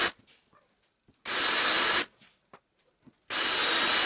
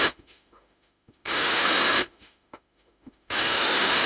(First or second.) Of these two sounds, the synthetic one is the second